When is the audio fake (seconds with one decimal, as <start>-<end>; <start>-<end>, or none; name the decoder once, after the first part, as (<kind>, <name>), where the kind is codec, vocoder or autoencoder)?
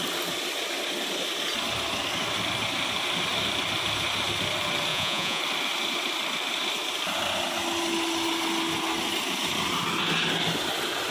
4.9-5.4 (vocoder, Vocos)